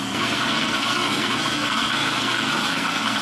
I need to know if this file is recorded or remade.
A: remade